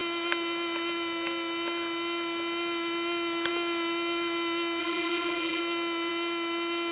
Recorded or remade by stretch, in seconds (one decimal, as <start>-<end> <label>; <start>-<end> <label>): 0.0-4.8 recorded; 4.8-5.6 remade; 5.6-6.9 recorded